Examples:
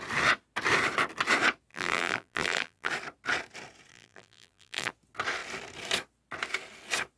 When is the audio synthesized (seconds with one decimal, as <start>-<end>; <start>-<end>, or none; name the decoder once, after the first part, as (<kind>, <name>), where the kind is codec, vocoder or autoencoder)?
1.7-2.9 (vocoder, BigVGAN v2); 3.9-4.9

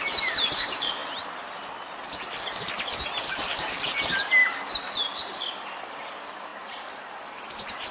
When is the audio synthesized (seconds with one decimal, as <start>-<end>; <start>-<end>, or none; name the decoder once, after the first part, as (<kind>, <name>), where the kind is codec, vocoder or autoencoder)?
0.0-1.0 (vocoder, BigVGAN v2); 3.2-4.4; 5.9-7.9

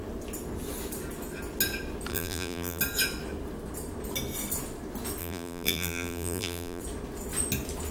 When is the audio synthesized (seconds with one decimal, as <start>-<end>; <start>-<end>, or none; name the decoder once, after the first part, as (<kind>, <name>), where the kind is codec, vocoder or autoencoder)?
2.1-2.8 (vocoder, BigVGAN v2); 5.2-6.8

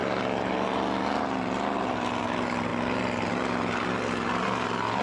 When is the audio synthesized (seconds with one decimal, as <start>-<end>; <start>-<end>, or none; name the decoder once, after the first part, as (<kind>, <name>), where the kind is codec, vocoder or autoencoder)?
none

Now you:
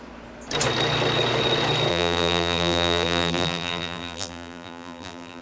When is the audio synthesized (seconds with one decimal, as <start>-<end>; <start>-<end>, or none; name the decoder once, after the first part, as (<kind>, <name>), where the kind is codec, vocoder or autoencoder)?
1.9-5.4 (vocoder, BigVGAN v2)

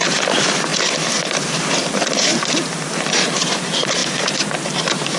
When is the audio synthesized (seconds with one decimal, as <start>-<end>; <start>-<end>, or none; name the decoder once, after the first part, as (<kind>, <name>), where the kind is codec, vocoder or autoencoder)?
0.0-0.7 (vocoder, BigVGAN v2); 1.7-2.3; 3.0-4.0; 4.8-5.2

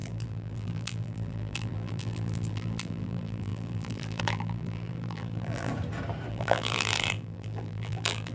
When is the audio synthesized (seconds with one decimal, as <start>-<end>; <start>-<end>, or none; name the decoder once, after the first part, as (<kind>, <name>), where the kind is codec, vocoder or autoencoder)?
0.0-5.7 (vocoder, BigVGAN v2); 6.3-8.3